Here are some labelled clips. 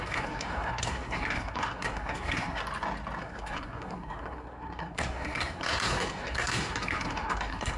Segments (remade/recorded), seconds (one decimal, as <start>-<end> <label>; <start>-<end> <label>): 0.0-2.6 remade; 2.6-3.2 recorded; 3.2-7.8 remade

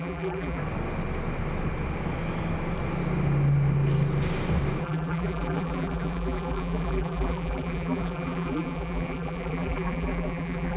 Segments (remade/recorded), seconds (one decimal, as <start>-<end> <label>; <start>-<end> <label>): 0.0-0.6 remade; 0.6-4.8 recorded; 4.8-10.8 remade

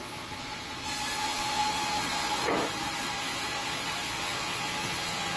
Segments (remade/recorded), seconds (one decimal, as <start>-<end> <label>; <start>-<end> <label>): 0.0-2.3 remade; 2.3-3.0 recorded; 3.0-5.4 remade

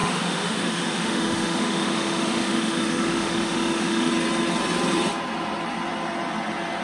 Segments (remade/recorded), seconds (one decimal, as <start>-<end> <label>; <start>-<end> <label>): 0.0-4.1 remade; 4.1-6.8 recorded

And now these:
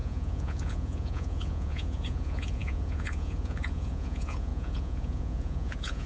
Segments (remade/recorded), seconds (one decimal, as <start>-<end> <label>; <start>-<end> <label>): 0.0-6.1 remade

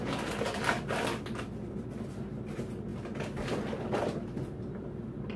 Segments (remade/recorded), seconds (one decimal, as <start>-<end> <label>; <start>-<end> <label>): 0.0-5.4 recorded

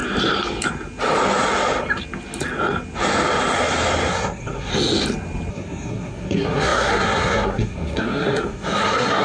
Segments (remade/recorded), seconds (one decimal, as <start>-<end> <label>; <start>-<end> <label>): 0.0-4.1 recorded; 4.1-4.7 remade; 4.7-5.5 recorded; 5.5-9.2 remade